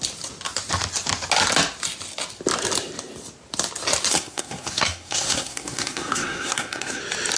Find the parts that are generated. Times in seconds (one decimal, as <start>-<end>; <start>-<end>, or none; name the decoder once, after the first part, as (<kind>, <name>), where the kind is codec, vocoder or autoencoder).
4.1-7.0 (codec, SNAC)